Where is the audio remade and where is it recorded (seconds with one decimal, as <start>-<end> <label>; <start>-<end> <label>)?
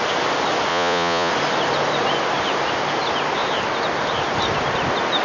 0.0-0.7 recorded; 0.7-1.3 remade; 1.3-5.2 recorded